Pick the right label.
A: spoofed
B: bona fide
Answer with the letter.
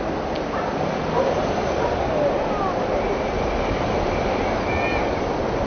B